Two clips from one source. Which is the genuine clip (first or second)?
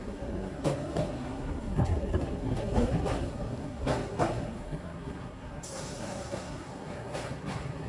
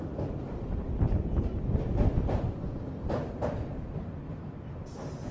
second